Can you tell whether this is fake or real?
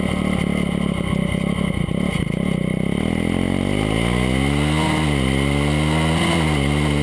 real